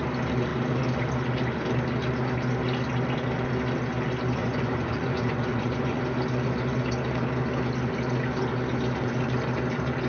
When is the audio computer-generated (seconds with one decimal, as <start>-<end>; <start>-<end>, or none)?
4.4-6.0

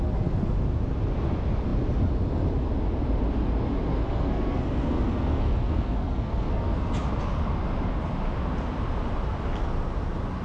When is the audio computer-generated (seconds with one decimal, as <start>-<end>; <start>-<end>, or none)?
3.9-6.9

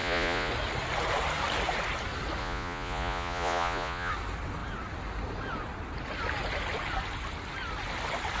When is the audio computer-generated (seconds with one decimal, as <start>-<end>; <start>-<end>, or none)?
0.0-0.5; 2.4-4.1

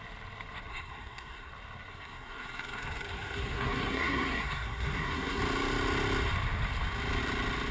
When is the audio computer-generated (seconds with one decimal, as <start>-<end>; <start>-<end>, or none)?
0.7-1.5; 1.9-5.4

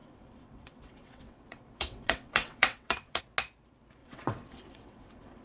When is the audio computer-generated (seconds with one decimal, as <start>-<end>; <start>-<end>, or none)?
0.0-3.2; 4.0-5.4

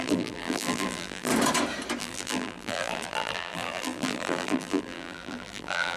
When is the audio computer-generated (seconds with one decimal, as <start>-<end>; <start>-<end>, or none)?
0.0-1.3; 2.0-6.0

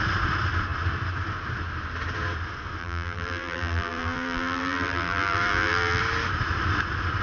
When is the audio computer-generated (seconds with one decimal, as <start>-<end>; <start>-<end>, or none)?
2.8-6.0